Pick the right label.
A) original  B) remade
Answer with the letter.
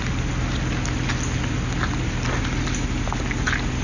A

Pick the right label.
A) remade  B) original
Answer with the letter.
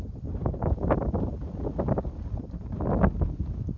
B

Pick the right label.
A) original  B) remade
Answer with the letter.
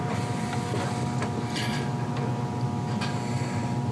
A